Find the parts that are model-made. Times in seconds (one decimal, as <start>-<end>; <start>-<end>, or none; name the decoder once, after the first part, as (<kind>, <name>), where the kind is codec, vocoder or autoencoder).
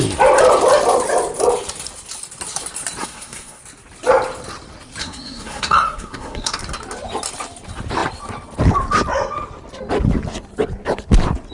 3.0-3.6 (codec, SNAC); 5.0-6.6